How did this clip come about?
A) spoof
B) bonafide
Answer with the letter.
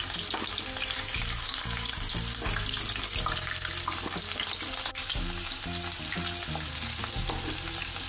B